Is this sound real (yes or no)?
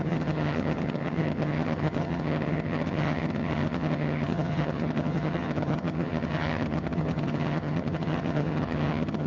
no